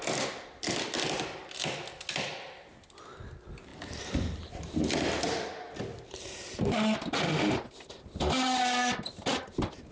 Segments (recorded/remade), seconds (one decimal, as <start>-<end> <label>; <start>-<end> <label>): 0.0-9.9 recorded